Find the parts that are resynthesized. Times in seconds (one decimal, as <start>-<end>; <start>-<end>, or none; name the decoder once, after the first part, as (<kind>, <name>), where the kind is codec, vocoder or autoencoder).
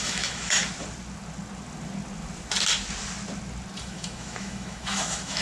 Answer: 0.0-0.6 (autoencoder, DAC-VAE); 3.8-5.4